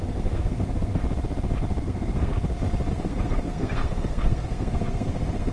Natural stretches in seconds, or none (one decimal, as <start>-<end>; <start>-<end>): 1.0-1.8; 2.3-2.9